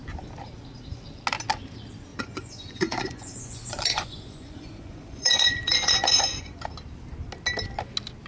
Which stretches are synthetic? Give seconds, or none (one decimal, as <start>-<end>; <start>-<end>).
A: 2.1-6.6